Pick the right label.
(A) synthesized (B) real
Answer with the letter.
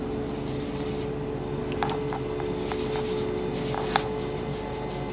B